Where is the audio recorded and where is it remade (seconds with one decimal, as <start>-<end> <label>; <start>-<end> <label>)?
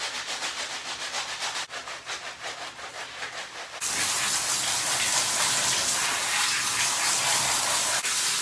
0.0-8.4 recorded